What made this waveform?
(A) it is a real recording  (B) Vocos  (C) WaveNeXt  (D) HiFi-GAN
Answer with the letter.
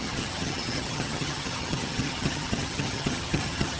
D